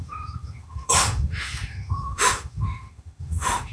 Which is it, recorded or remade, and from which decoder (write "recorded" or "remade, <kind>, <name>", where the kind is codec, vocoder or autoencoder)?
remade, autoencoder, DAC-VAE